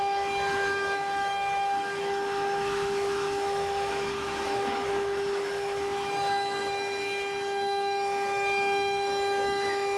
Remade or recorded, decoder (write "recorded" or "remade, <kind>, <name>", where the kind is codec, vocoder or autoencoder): remade, autoencoder, DAC-VAE